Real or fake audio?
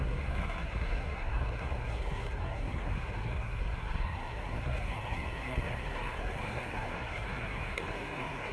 fake